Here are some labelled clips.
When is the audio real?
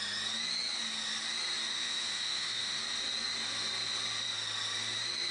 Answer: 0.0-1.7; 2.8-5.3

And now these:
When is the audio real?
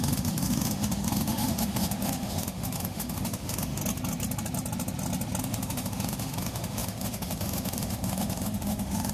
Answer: 3.8-5.4